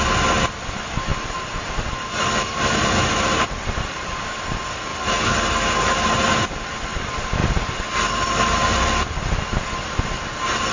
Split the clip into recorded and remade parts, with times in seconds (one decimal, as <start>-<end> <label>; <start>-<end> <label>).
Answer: 0.0-10.7 recorded